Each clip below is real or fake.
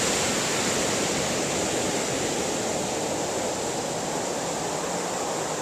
real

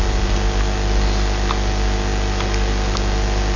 real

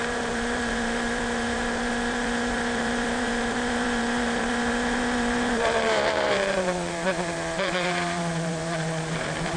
fake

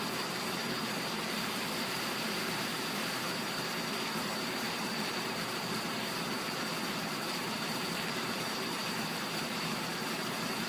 fake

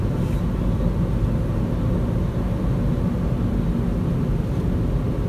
real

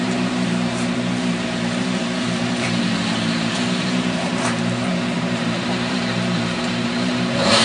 fake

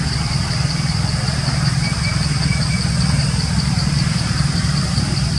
fake